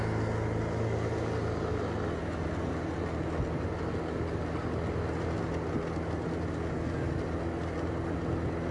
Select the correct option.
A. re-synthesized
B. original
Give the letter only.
B